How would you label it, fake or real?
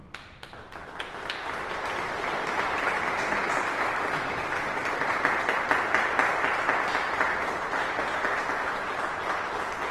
real